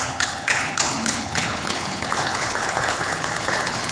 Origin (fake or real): fake